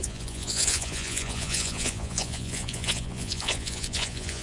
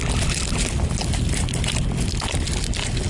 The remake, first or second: first